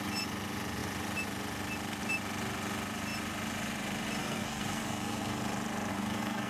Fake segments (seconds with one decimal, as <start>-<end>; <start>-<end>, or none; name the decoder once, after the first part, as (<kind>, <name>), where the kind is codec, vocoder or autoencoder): 4.2-5.4 (codec, SNAC); 5.9-6.5